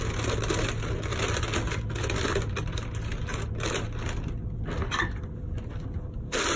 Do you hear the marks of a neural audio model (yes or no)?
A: no